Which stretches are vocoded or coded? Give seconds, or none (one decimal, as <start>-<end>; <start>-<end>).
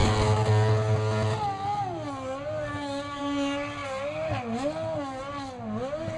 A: none